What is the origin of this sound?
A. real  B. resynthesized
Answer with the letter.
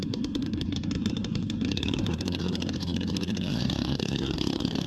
B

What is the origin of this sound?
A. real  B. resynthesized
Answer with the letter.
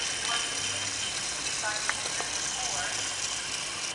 A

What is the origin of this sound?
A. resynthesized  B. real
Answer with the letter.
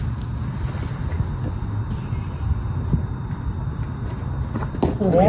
B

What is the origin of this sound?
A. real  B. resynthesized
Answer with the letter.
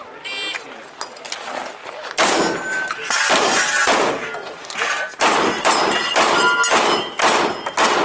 A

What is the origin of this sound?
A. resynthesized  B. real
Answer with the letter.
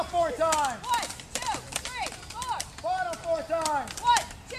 B